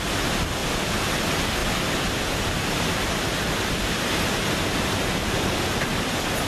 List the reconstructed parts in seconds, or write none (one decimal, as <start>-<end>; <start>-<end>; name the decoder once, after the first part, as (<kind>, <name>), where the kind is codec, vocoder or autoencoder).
none